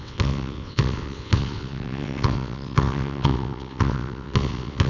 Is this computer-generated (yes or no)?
yes